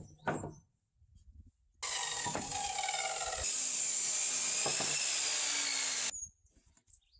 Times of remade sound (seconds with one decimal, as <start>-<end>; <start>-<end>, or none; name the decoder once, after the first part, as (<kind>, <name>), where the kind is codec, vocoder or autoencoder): none